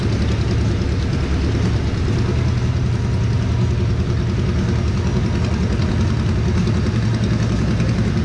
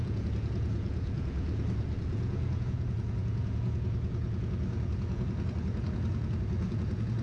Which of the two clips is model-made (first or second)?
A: second